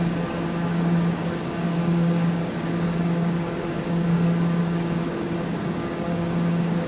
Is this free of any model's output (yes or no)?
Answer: no